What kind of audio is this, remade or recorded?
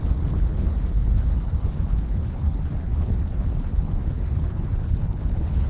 remade